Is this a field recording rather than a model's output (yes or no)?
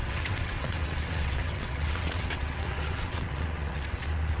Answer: no